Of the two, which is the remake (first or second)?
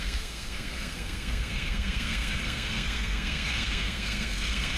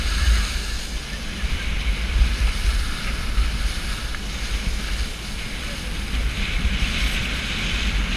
first